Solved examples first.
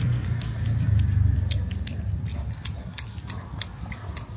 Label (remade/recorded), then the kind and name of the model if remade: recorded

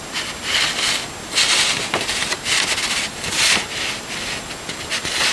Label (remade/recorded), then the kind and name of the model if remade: recorded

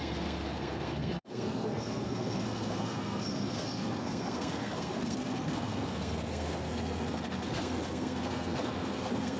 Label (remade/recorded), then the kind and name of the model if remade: remade, codec, SNAC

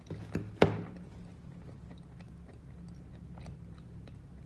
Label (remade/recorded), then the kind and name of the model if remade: recorded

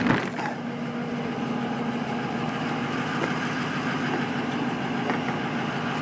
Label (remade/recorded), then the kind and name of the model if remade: recorded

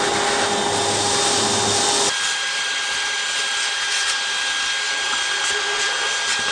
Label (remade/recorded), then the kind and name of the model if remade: recorded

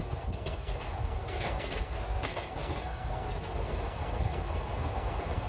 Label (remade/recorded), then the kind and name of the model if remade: remade, codec, SNAC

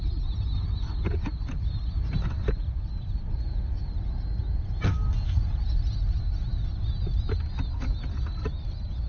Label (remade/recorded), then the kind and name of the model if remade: recorded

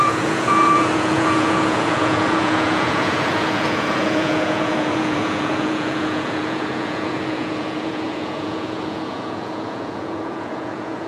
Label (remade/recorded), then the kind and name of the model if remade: remade, vocoder, Vocos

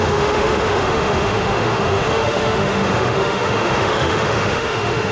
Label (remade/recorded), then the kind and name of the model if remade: remade, autoencoder, DAC-VAE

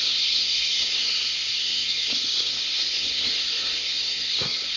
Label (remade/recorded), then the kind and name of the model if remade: remade, codec, SNAC